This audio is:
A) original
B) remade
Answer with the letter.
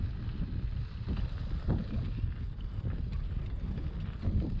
A